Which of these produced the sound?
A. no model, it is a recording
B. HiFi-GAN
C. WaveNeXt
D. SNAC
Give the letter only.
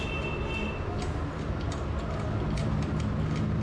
A